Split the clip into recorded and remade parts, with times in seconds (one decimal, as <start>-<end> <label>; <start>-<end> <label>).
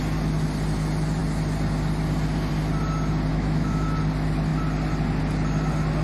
0.0-3.3 recorded; 3.3-4.0 remade; 4.0-6.0 recorded